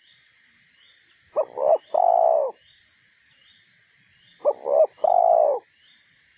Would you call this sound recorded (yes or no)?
no